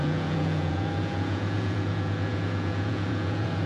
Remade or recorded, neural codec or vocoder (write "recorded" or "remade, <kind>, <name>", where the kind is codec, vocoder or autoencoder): remade, vocoder, Vocos